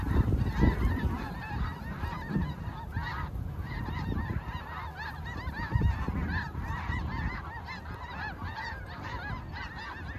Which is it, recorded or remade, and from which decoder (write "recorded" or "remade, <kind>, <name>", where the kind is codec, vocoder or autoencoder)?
recorded